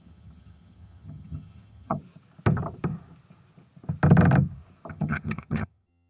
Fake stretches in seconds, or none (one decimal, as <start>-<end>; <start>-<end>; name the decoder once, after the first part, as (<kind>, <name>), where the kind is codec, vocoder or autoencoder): 0.0-2.0 (vocoder, HiFi-GAN); 4.9-6.1